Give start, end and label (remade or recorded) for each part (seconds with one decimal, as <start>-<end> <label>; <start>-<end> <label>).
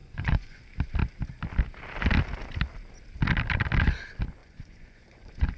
0.0-0.6 remade; 0.6-4.4 recorded; 4.4-5.6 remade